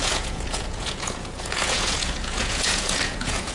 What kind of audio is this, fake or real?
fake